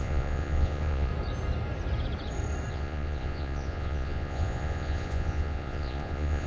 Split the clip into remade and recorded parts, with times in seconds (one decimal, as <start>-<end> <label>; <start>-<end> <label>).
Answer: 0.0-1.1 remade; 1.1-2.7 recorded; 2.7-6.5 remade